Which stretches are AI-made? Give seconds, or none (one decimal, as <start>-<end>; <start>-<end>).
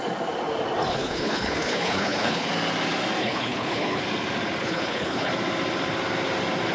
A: 0.9-2.5; 3.2-4.0; 4.6-5.3